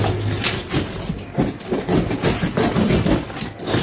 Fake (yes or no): no